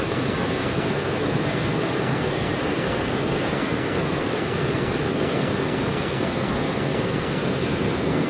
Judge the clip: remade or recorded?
remade